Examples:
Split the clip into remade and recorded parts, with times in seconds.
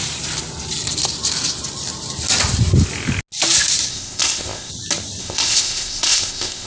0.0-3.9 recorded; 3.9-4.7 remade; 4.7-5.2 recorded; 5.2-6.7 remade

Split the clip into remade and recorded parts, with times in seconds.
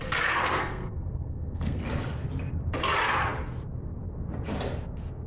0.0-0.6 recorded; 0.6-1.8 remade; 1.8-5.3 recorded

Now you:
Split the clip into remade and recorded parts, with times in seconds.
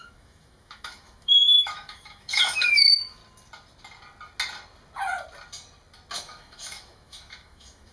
0.0-3.2 remade; 3.2-6.2 recorded; 6.2-7.9 remade